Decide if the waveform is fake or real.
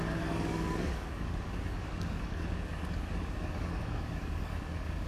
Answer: fake